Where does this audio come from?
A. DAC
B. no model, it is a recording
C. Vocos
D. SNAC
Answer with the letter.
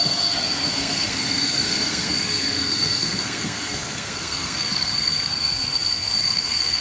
D